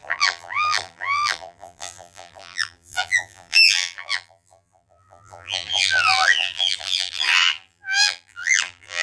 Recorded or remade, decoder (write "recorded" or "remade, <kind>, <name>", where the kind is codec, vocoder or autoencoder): remade, vocoder, BigVGAN v2